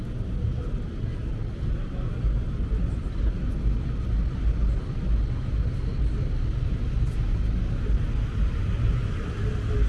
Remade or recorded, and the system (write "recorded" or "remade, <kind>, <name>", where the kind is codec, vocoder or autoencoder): recorded